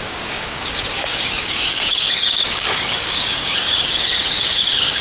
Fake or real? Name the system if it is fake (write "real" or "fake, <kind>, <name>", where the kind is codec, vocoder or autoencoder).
fake, codec, DAC